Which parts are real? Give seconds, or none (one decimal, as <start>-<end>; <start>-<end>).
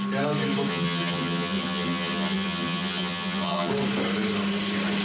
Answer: 0.0-0.7; 3.7-5.0